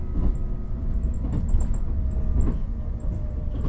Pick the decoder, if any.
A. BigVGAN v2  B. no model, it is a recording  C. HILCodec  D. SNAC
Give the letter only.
B